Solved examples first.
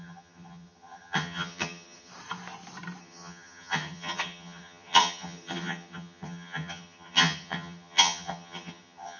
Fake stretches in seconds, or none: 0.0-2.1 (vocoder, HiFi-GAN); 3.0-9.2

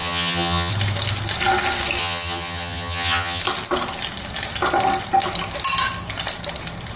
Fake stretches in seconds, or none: 0.0-0.7 (vocoder, HiFi-GAN); 2.0-3.4

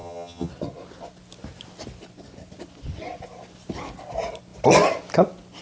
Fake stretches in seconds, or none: 0.0-0.5 (vocoder, HiFi-GAN)

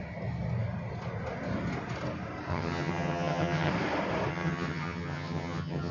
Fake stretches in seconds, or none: 2.5-3.7 (vocoder, HiFi-GAN); 4.3-5.9

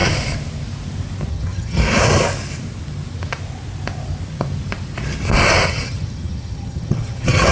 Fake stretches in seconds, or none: 1.3-1.8 (vocoder, HiFi-GAN); 5.7-7.5

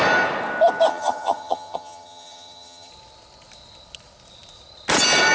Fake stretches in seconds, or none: 0.9-2.9 (vocoder, HiFi-GAN)

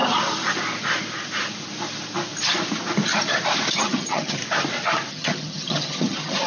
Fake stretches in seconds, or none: 3.7-4.4 (vocoder, HiFi-GAN); 5.1-6.5